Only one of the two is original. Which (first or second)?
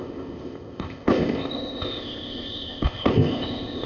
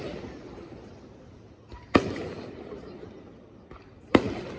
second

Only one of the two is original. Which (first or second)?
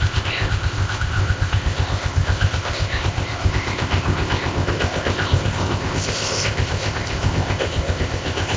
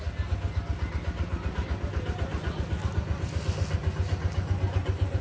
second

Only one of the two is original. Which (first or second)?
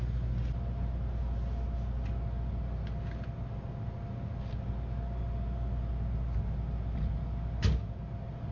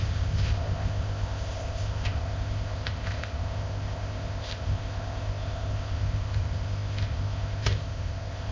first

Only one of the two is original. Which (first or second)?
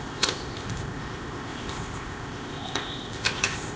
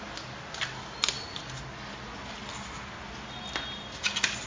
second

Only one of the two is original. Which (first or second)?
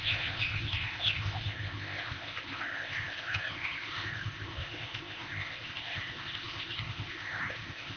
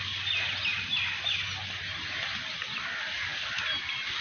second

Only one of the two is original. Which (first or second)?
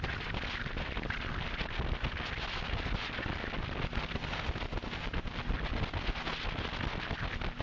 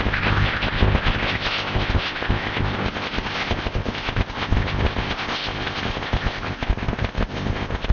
first